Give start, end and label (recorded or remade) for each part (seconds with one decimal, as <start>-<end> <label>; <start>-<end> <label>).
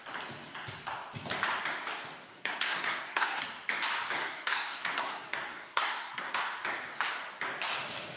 0.0-2.3 recorded; 2.3-3.4 remade; 3.4-4.2 recorded; 4.2-6.4 remade; 6.4-8.2 recorded